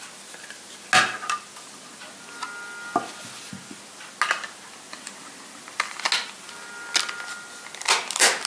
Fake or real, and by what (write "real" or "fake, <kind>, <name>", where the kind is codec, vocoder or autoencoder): real